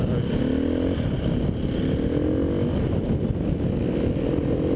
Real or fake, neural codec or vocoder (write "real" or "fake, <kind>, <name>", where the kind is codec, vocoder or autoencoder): real